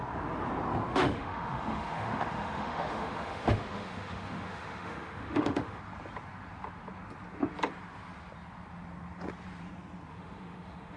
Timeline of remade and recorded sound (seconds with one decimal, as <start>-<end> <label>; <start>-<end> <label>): 0.0-0.9 recorded; 0.9-5.8 remade; 5.8-10.1 recorded; 10.1-11.0 remade